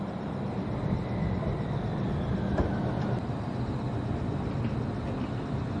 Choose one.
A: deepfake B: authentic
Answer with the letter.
B